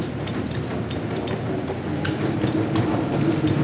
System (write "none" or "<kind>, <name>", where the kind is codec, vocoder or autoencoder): vocoder, BigVGAN v2